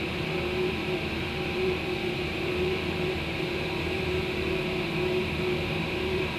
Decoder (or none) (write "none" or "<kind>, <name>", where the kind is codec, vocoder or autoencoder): vocoder, BigVGAN v2